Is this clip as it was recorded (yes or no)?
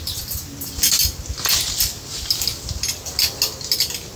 yes